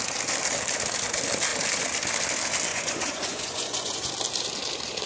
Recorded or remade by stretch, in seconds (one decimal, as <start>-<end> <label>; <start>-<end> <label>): 0.0-2.7 recorded; 2.7-4.1 remade; 4.1-5.1 recorded